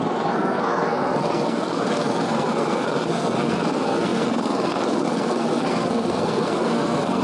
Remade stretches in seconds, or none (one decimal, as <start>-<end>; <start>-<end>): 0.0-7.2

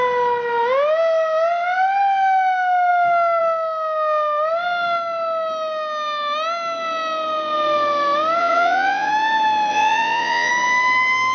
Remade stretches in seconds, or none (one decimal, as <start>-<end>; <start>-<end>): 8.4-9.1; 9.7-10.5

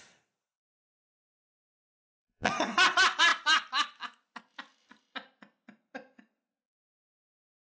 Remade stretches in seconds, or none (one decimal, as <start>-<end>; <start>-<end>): 1.7-2.5

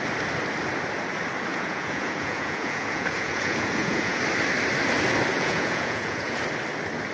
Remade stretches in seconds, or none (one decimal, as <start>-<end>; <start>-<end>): 1.5-4.2; 5.3-6.4

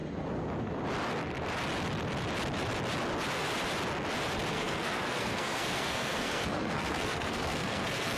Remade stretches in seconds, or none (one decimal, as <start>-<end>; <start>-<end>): 4.5-8.2

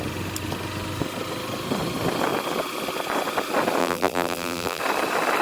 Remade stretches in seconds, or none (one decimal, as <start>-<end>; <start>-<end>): 3.8-4.8

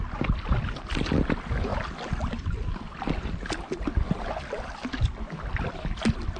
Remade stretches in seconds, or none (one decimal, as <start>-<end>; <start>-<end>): none

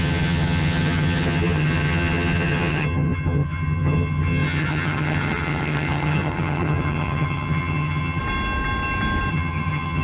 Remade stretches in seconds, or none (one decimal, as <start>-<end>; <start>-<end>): 0.0-8.2; 9.3-10.0